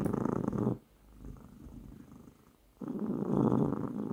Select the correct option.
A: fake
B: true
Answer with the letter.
A